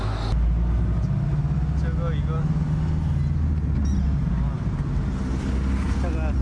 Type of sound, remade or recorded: recorded